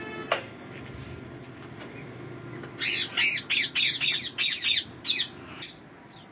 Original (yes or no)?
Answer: yes